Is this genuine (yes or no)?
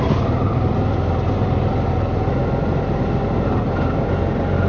yes